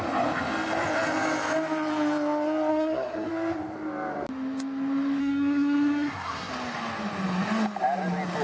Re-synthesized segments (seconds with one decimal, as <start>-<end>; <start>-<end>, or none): 2.7-3.3; 5.2-6.5